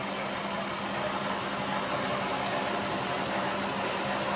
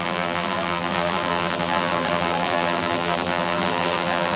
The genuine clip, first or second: first